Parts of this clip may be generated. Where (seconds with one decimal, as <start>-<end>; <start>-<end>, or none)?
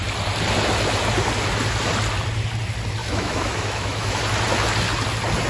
3.0-4.2